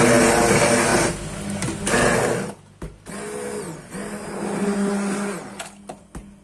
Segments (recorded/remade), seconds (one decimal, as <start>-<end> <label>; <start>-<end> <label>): 0.0-6.4 recorded